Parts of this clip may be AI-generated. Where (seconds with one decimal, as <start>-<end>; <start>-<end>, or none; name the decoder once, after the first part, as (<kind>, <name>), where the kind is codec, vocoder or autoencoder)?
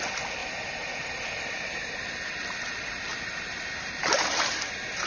0.4-2.3 (vocoder, BigVGAN v2); 3.1-5.1